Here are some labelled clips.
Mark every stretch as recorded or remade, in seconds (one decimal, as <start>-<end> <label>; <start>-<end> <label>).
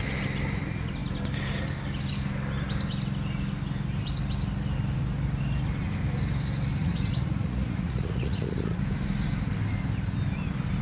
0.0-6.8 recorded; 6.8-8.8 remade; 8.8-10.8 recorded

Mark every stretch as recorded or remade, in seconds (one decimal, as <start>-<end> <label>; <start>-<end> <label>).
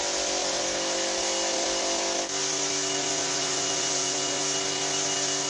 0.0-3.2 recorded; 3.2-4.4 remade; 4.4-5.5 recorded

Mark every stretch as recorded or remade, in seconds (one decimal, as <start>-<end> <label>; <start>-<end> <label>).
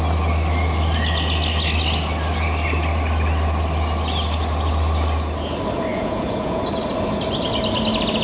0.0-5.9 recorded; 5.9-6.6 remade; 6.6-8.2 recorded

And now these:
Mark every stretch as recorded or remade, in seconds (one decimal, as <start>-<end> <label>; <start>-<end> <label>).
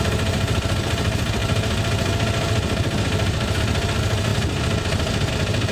0.0-5.7 recorded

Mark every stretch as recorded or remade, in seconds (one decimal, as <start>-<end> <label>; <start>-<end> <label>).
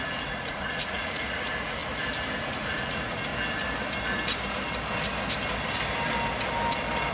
0.0-1.8 remade; 1.8-2.4 recorded; 2.4-3.3 remade; 3.3-7.1 recorded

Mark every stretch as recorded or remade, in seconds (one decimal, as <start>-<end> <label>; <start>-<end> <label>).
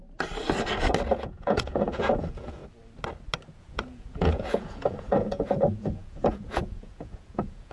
0.0-1.1 recorded; 1.1-2.6 remade; 2.6-3.6 recorded; 3.6-7.7 remade